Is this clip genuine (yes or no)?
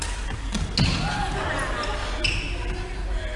yes